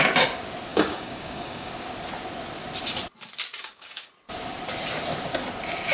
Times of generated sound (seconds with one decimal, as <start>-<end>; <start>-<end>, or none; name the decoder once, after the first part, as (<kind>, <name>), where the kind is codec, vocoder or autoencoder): 0.7-1.7 (codec, DAC); 3.6-4.1

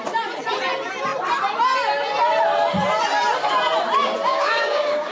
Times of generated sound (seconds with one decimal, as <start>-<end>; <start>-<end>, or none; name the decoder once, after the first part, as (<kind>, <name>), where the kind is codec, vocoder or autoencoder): 4.3-5.1 (codec, DAC)